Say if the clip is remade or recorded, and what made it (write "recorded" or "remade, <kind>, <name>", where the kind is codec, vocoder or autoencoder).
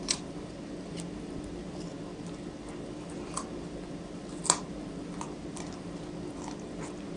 recorded